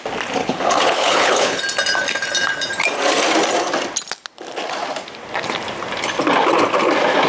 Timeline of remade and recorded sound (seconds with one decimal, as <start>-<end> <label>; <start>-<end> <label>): 0.0-0.4 recorded; 0.4-1.6 remade; 1.6-7.3 recorded